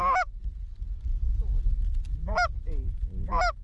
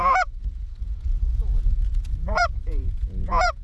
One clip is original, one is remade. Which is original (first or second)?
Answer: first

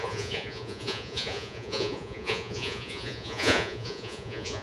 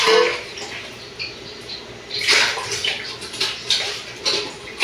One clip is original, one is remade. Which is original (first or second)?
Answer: second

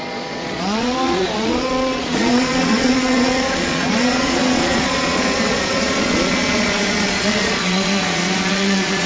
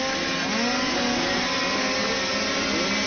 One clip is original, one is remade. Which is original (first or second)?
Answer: second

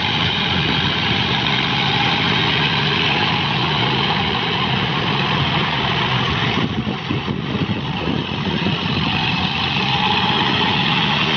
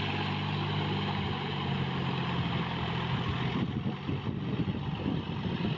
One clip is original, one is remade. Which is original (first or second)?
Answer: second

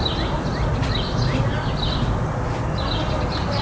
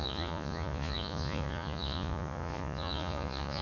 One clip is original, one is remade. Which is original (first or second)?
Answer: first